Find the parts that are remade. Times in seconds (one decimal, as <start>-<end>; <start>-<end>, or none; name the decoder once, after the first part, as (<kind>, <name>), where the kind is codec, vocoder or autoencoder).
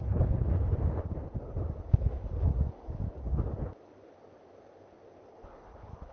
0.0-0.5 (codec, HILCodec); 1.9-2.5; 5.3-6.1